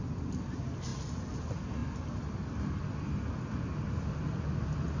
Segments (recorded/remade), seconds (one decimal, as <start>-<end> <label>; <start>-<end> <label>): 0.0-5.0 recorded

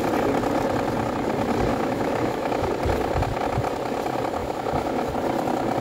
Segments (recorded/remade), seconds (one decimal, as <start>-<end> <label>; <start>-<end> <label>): 0.0-1.7 recorded; 1.7-2.7 remade; 2.7-4.4 recorded; 4.4-5.1 remade; 5.1-5.8 recorded

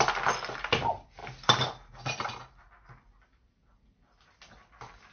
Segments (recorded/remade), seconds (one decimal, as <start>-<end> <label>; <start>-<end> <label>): 0.0-5.1 recorded

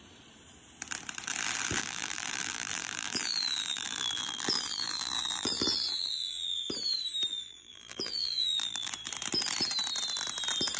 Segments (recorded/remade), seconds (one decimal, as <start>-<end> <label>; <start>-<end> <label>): 0.0-1.8 recorded; 1.8-6.7 remade; 6.7-7.3 recorded; 7.3-8.9 remade; 8.9-10.8 recorded

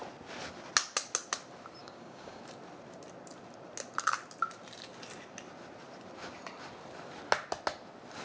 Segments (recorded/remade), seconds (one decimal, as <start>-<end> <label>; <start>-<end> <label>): 0.0-1.8 recorded; 1.8-2.4 remade; 2.4-8.2 recorded